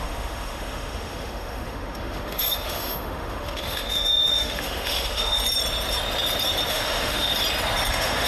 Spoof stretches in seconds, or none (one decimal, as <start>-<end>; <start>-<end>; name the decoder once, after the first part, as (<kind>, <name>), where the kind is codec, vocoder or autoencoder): 0.0-5.4 (autoencoder, DAC-VAE); 6.7-7.3; 7.9-8.3